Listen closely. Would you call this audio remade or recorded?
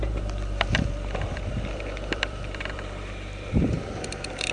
remade